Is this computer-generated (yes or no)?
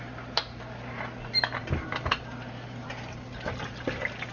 no